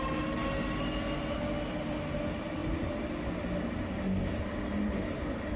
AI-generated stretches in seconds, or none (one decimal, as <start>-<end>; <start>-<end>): none